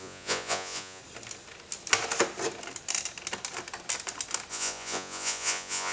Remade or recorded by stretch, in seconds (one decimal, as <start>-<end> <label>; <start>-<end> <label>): 0.0-1.0 remade; 1.0-4.5 recorded; 4.5-5.9 remade